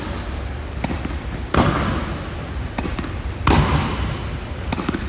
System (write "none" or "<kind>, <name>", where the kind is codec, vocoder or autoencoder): vocoder, BigVGAN v2